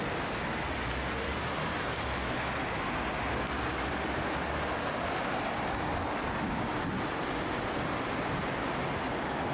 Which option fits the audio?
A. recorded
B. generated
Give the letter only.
A